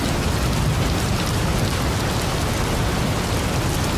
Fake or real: real